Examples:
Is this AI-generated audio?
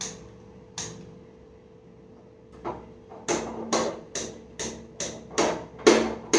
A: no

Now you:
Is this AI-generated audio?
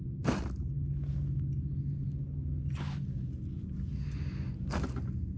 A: no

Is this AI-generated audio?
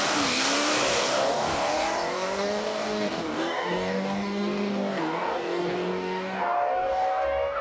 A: yes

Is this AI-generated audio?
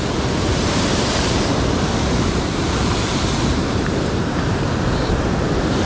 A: yes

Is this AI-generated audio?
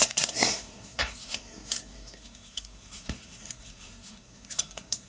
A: yes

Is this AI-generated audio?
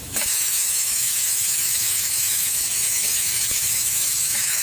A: yes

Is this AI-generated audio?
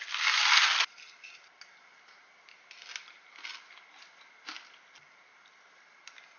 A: no